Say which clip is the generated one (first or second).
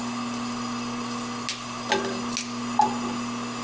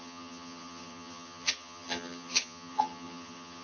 second